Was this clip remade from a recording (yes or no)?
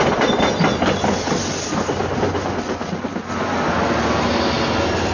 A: no